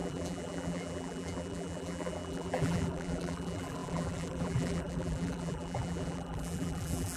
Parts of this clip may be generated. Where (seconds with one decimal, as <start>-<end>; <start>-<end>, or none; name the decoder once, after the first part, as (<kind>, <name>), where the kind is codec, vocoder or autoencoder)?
0.0-7.2 (vocoder, BigVGAN v2)